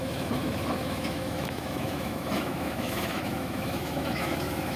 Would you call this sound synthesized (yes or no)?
yes